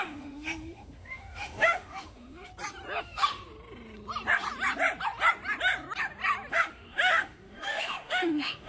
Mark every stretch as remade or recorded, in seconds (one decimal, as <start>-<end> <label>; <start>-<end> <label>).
0.0-2.5 remade; 2.5-3.0 recorded; 3.0-3.4 remade; 3.4-6.5 recorded; 6.5-8.7 remade